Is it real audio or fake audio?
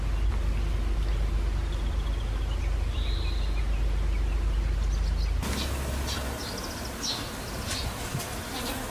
real